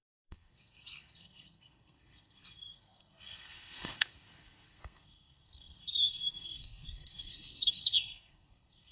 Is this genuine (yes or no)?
no